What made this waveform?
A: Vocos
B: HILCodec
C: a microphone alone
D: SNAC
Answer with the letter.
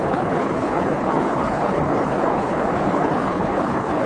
B